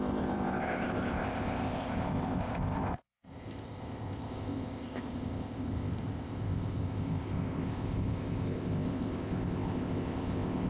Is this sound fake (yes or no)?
yes